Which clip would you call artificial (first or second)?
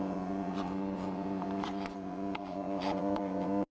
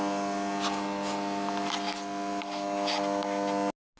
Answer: first